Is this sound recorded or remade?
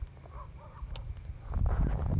recorded